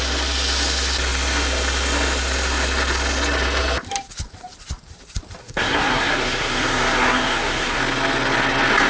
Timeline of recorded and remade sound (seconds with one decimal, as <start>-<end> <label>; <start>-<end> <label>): 0.0-5.4 recorded; 5.4-7.8 remade; 7.8-8.9 recorded